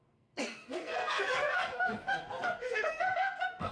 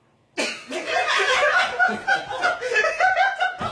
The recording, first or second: second